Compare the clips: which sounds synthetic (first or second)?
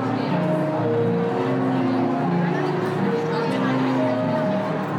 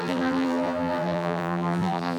second